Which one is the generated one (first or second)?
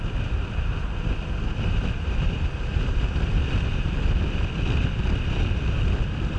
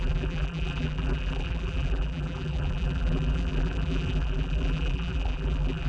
second